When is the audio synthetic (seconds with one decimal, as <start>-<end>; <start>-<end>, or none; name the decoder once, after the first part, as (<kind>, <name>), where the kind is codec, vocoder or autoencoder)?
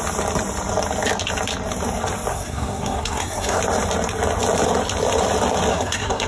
2.3-3.6 (codec, SNAC); 5.7-6.3